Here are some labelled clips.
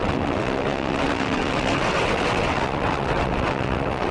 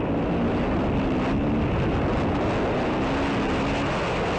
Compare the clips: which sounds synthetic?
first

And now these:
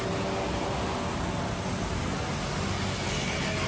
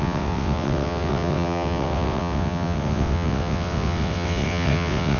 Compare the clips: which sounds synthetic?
second